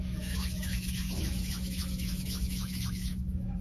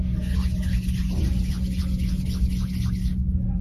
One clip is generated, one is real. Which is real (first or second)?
second